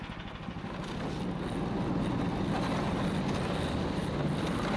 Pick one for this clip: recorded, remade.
recorded